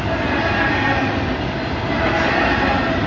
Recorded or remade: recorded